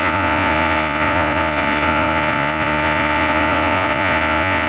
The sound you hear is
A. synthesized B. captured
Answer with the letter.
A